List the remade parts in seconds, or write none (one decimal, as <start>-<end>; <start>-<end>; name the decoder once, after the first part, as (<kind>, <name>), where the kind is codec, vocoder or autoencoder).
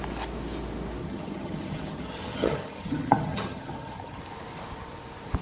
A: 1.0-4.2 (vocoder, HiFi-GAN)